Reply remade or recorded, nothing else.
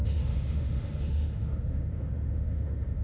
remade